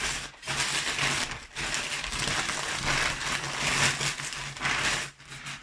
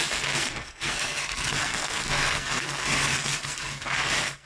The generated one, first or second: second